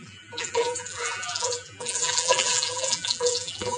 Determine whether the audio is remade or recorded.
remade